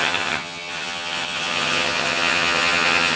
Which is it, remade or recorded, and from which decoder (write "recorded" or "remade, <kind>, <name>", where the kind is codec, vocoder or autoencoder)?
remade, vocoder, HiFi-GAN